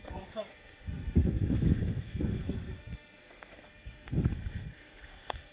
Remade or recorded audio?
remade